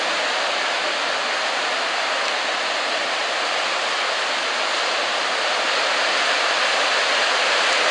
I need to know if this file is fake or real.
real